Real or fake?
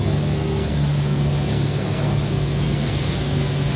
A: fake